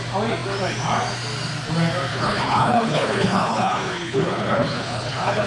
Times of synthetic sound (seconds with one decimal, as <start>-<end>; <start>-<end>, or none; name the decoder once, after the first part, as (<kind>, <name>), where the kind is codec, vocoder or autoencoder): 2.1-5.5 (codec, HILCodec)